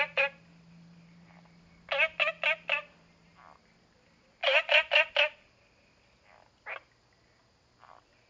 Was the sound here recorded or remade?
recorded